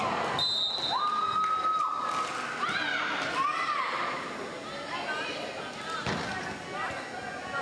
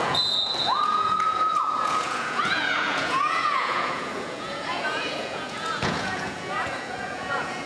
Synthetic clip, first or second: second